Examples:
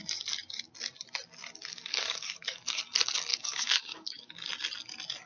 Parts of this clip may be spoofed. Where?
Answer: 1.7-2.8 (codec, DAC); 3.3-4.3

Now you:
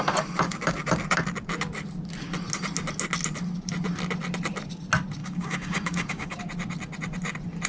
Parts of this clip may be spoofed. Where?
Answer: 5.2-6.4 (codec, DAC)

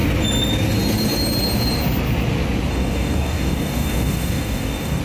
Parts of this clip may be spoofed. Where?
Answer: 2.7-5.0 (codec, DAC)

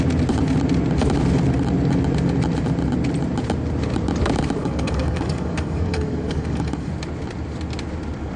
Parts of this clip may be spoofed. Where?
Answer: 4.6-6.9 (codec, DAC)

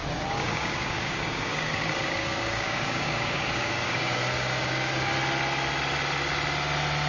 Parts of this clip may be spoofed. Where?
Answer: 0.0-5.1 (codec, DAC)

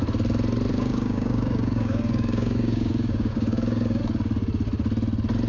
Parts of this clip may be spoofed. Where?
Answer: 0.7-4.0 (codec, DAC)